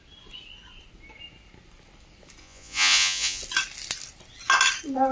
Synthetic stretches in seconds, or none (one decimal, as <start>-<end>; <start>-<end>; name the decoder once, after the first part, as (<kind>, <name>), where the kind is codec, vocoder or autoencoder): 2.4-3.4 (vocoder, Vocos)